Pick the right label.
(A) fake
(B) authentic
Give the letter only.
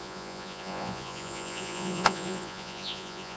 A